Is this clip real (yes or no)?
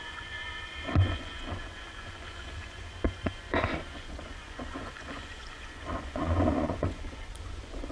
no